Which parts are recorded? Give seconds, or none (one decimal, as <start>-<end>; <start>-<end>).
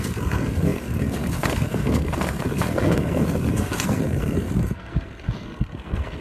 none